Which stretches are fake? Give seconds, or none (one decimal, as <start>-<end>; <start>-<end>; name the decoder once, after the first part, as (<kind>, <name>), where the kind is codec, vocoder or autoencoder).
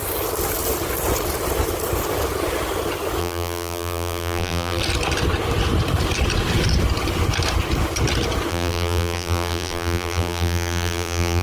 3.2-4.8 (vocoder, BigVGAN v2); 8.5-11.4